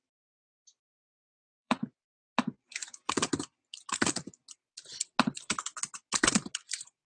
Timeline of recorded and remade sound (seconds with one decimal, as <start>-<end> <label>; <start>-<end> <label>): 0.0-2.0 remade; 2.0-7.2 recorded